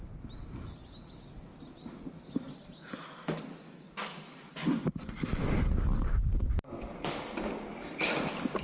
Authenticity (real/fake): real